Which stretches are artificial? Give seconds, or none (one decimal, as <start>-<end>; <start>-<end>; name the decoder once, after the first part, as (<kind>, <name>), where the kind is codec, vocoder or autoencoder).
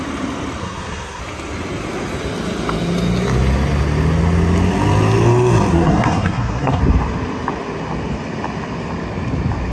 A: 0.6-1.2 (codec, SNAC); 5.7-6.8